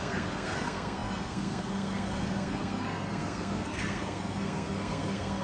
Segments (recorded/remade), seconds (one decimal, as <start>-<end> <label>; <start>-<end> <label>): 0.0-5.4 remade